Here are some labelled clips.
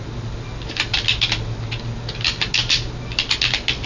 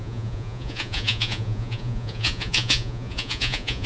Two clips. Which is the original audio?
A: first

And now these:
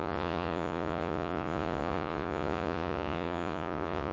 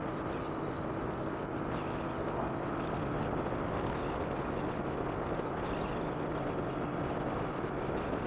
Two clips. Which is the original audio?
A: second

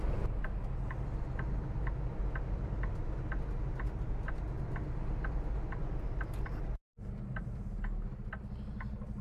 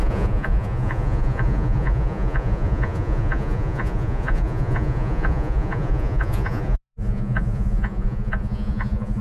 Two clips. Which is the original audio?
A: first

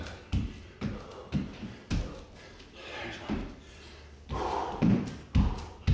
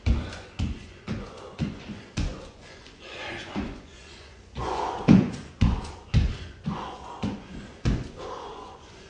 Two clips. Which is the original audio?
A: first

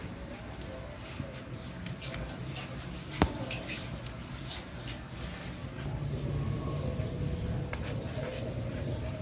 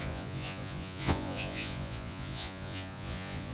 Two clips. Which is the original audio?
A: first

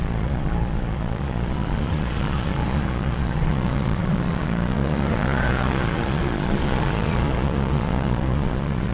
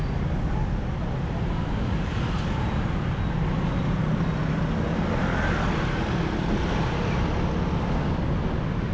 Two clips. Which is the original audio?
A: second